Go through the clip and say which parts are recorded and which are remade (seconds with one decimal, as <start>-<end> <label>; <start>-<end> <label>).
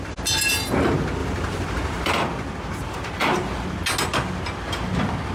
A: 0.0-1.2 recorded; 1.2-2.1 remade; 2.1-2.8 recorded; 2.8-3.6 remade; 3.6-5.3 recorded